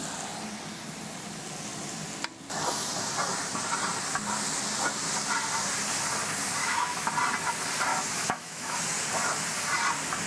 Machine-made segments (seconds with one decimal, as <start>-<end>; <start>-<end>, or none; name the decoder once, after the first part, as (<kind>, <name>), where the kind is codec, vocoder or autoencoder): 6.6-7.1 (autoencoder, DAC-VAE); 7.9-8.8